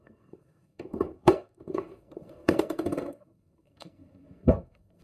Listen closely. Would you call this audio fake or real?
fake